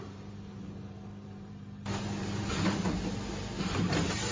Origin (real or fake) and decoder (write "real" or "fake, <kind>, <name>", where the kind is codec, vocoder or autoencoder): fake, vocoder, BigVGAN v2